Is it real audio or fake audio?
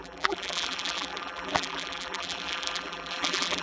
fake